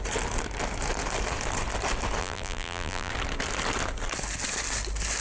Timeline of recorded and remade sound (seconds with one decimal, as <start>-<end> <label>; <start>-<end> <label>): 0.0-2.2 recorded; 2.2-3.1 remade; 3.1-5.2 recorded